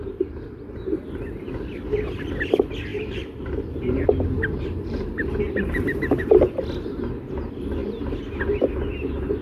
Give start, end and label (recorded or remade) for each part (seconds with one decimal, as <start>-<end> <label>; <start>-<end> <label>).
0.0-2.9 recorded; 2.9-6.3 remade; 6.3-9.4 recorded